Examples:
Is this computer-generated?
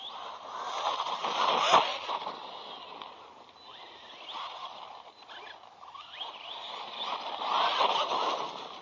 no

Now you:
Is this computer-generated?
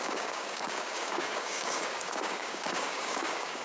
yes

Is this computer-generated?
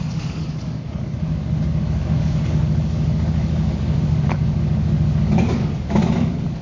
yes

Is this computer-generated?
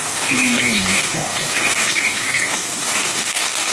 yes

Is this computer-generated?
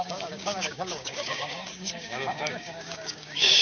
yes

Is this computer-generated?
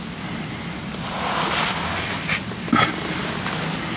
no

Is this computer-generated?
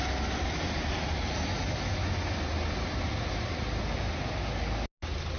no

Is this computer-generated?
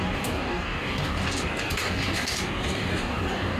yes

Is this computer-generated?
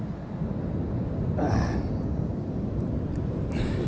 no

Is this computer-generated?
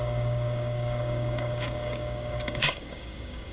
yes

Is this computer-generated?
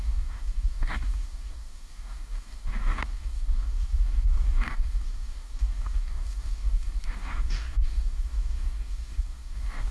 yes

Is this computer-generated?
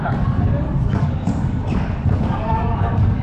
yes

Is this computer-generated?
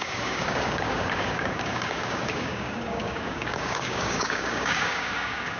yes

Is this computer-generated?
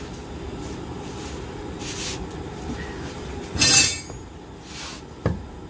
no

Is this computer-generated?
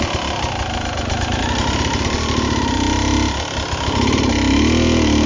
no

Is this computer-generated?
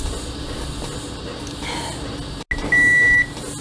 no